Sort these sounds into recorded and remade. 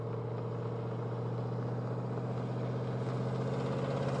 recorded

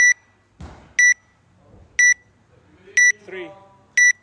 recorded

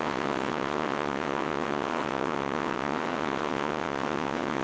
remade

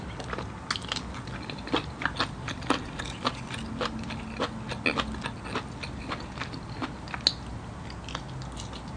recorded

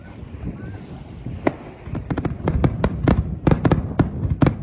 recorded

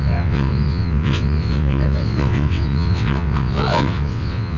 remade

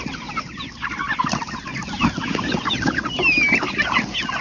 recorded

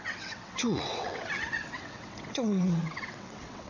remade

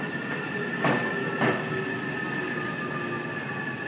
recorded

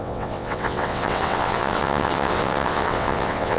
remade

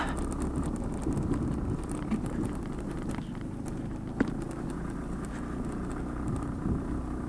recorded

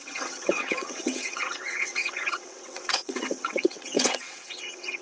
remade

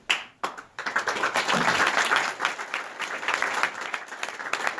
recorded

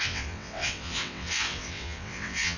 remade